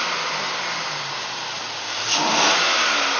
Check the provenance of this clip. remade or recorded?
recorded